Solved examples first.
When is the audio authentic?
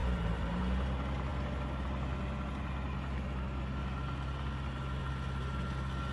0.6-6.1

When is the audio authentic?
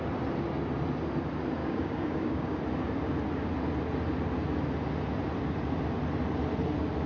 0.0-1.6; 2.6-7.1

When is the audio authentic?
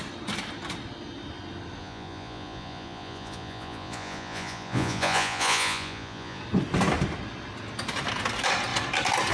0.0-1.8; 6.4-9.3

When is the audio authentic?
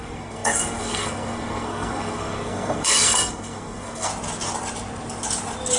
4.1-5.8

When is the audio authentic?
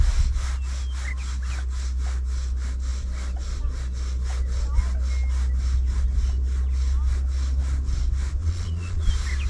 0.0-8.4; 9.1-9.5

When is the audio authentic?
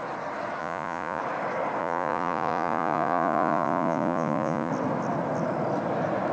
0.0-0.6; 1.2-1.8; 4.7-6.3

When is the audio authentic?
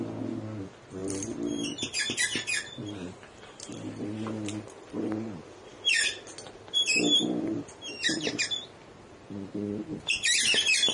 0.0-10.9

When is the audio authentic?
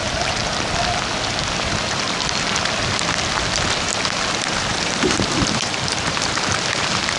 0.4-4.7